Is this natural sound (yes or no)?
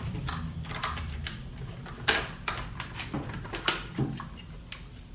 no